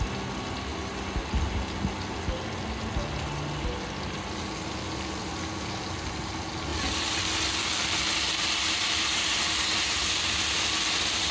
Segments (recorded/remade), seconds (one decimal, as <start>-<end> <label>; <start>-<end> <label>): 0.0-11.3 recorded